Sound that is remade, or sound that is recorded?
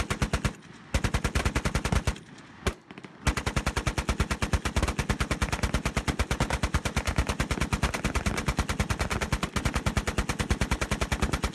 recorded